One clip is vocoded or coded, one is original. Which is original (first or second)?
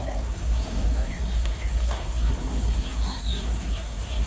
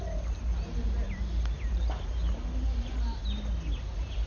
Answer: second